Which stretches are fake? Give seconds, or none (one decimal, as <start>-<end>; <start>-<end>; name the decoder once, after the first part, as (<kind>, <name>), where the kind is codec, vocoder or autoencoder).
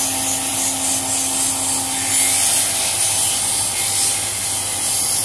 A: none